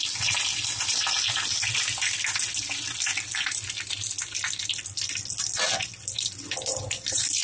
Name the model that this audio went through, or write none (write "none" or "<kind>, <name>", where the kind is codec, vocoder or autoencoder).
none